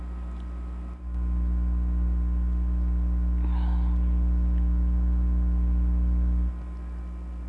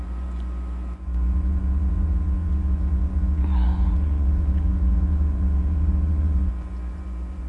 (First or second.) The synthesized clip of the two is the second